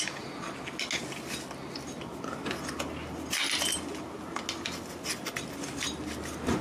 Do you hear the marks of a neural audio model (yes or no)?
no